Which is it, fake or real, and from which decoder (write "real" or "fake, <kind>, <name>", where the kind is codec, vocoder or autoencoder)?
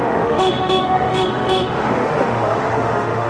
fake, autoencoder, DAC-VAE